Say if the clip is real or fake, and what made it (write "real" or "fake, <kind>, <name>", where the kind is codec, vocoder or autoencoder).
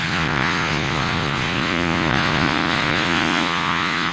fake, vocoder, Vocos